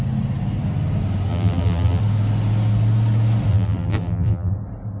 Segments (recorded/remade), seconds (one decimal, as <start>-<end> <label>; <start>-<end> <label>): 0.0-1.3 recorded; 1.3-2.0 remade; 2.0-3.5 recorded; 3.5-4.5 remade; 4.5-5.0 recorded